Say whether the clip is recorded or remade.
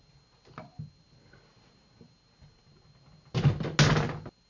recorded